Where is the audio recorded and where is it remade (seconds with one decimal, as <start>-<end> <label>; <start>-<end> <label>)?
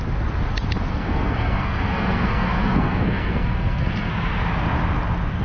0.0-0.9 recorded; 0.9-4.1 remade; 4.1-5.4 recorded